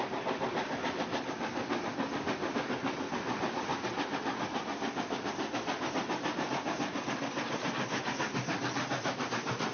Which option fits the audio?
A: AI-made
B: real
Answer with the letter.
A